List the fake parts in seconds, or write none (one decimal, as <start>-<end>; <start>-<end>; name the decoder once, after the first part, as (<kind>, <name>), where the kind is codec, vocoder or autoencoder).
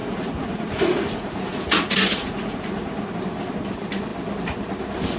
0.0-3.1 (vocoder, Vocos)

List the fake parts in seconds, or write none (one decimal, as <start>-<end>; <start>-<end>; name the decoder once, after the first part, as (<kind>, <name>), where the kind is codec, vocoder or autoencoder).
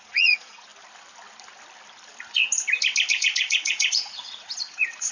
0.0-0.7 (vocoder, Vocos); 3.1-5.1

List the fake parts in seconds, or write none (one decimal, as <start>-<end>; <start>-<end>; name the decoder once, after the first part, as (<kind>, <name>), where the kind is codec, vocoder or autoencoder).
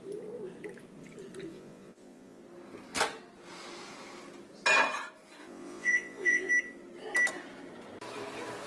1.5-2.4 (vocoder, Vocos); 5.4-6.5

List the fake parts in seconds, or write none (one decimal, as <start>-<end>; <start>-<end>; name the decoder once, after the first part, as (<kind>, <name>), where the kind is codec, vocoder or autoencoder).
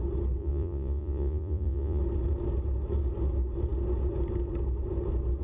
0.4-2.0 (vocoder, Vocos)